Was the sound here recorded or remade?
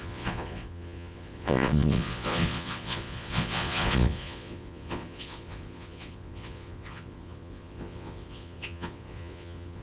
remade